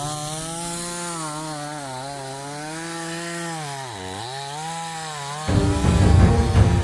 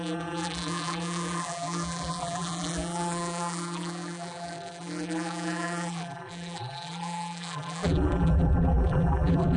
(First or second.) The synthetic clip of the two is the second